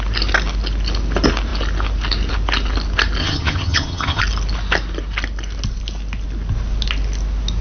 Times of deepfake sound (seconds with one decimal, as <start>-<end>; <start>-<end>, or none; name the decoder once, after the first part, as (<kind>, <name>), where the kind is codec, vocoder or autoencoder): 3.2-4.2 (vocoder, HiFi-GAN)